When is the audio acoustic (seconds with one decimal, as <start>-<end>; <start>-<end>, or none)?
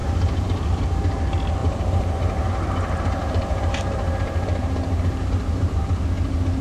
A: 0.8-1.6; 2.5-3.2; 5.9-6.6